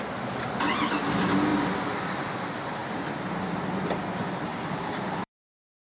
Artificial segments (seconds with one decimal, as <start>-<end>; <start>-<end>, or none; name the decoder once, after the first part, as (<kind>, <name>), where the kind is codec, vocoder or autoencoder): 4.5-5.3 (vocoder, BigVGAN v2)